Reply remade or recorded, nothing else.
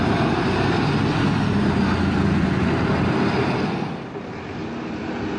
recorded